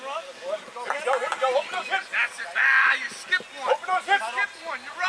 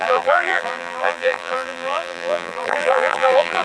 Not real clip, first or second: second